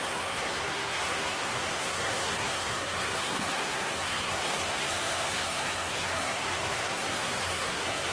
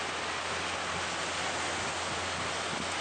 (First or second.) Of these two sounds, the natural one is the second